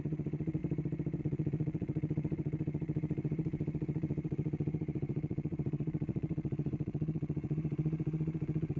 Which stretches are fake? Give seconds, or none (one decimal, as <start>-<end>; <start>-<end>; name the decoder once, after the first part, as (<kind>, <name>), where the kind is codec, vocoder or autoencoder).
0.0-0.6 (vocoder, Vocos); 1.2-8.8